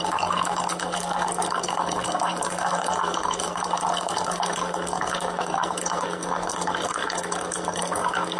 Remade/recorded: remade